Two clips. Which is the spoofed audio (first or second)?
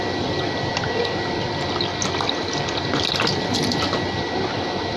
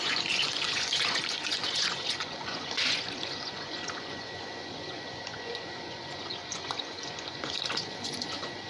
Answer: second